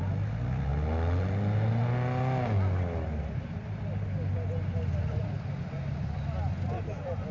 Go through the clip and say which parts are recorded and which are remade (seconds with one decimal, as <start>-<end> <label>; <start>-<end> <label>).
0.0-7.3 recorded